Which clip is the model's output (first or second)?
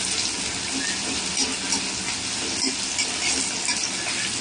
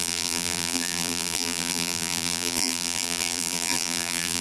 second